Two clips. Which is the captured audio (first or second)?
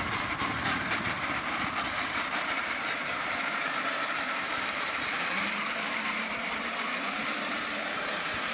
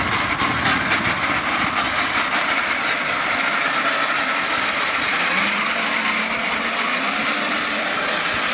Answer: second